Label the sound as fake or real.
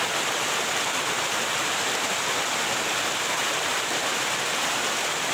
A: real